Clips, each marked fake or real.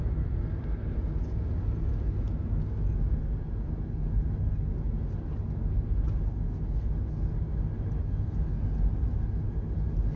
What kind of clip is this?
real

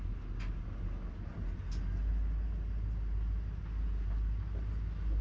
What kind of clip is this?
real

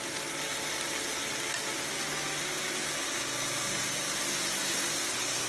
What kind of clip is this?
real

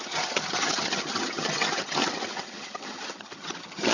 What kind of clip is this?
fake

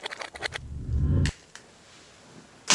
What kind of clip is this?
real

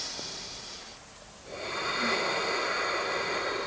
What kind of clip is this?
real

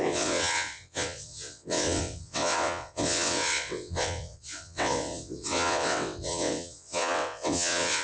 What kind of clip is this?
fake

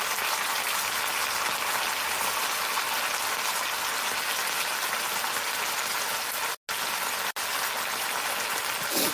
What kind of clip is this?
real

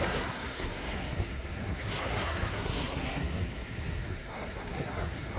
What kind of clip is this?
fake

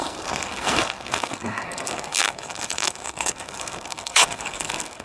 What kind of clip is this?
fake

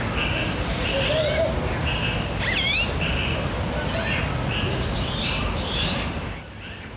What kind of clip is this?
real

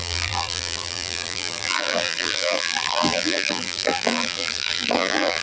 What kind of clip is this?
fake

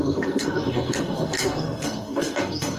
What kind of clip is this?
fake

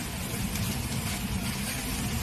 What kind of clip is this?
real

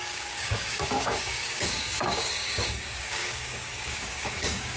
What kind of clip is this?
fake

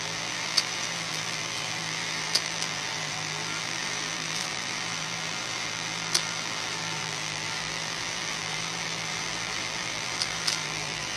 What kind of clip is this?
fake